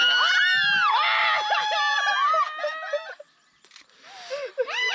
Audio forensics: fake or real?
real